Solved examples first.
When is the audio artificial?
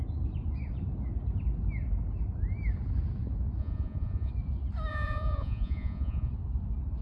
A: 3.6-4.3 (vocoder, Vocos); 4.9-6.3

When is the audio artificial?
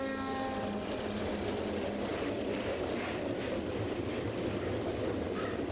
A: none